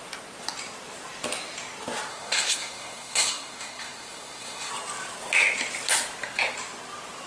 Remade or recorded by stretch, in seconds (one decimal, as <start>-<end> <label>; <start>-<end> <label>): 0.0-2.1 recorded; 2.1-4.7 remade; 4.7-7.3 recorded